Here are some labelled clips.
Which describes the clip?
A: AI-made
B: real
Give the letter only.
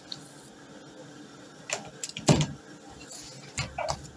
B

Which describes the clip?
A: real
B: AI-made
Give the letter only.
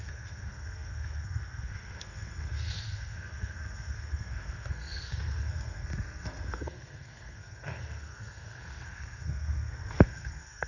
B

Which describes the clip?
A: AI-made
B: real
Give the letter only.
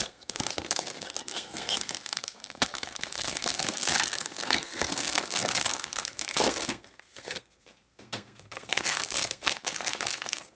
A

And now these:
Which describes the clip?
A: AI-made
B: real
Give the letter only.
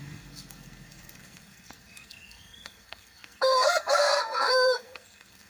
A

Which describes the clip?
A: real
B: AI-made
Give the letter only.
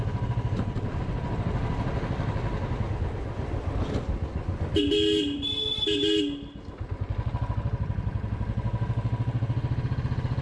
A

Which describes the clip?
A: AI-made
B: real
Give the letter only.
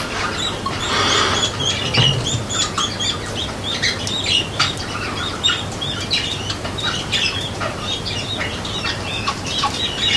B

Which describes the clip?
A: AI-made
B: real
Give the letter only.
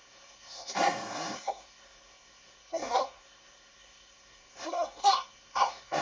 A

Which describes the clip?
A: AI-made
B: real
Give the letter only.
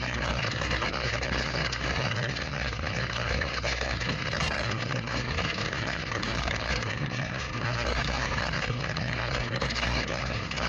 A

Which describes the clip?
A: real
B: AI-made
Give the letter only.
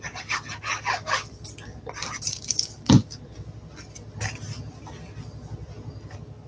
A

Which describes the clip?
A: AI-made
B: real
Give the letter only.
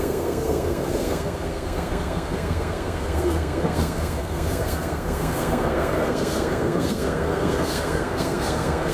A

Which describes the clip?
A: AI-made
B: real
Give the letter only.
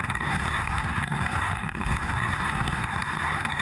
A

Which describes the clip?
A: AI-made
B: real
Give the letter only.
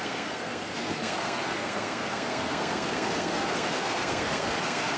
A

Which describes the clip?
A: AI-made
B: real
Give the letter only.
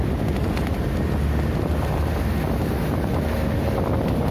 B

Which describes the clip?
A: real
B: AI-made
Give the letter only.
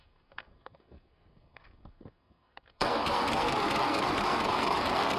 B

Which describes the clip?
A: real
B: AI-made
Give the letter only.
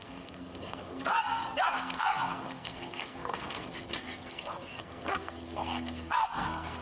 B